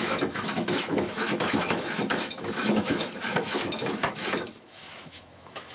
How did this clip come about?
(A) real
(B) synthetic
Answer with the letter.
B